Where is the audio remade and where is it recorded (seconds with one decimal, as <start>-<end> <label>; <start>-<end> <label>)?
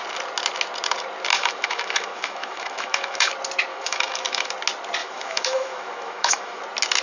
0.0-1.3 recorded; 1.3-3.3 remade; 3.3-3.7 recorded; 3.7-4.5 remade; 4.5-5.0 recorded; 5.0-6.6 remade; 6.6-7.0 recorded